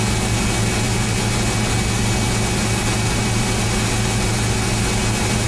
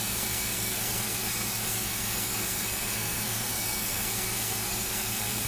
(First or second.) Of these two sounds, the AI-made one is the second